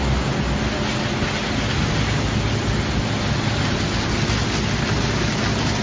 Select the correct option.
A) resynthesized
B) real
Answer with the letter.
B